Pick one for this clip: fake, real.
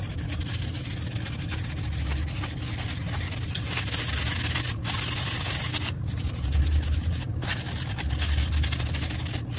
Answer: real